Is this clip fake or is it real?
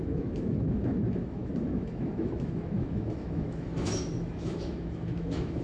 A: fake